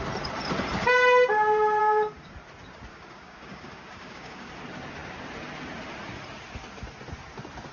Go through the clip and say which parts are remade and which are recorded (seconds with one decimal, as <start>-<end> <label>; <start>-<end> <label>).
0.0-1.8 recorded; 1.8-2.3 remade; 2.3-2.9 recorded; 2.9-4.5 remade; 4.5-7.7 recorded